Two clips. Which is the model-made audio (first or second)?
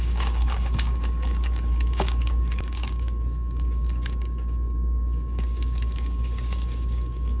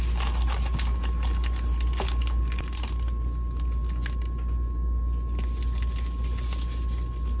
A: first